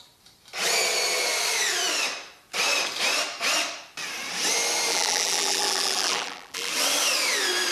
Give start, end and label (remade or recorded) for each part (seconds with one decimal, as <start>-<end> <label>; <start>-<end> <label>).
0.0-4.9 recorded; 4.9-6.7 remade; 6.7-7.7 recorded